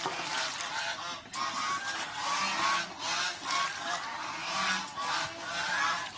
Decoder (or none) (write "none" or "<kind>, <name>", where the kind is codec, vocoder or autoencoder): none